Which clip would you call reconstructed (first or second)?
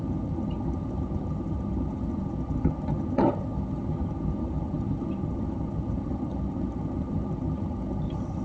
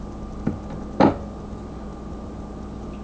first